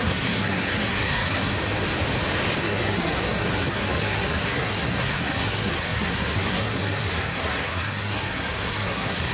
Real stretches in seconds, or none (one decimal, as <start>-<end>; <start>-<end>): 1.5-2.6